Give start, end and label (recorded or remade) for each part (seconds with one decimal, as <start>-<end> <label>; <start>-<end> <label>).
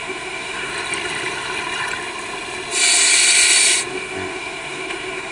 0.0-0.7 remade; 0.7-3.9 recorded; 3.9-5.3 remade